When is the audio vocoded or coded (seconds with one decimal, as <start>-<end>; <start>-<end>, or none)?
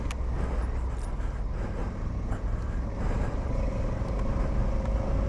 1.8-4.4